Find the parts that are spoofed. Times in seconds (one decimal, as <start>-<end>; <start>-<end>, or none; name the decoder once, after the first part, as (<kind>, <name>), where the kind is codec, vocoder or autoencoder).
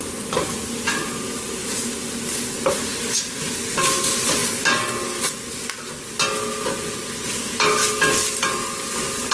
none